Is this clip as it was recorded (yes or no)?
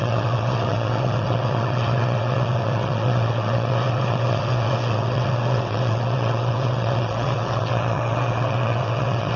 no